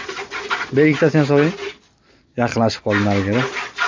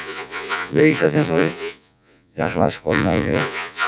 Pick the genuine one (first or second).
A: first